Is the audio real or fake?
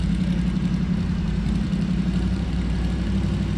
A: fake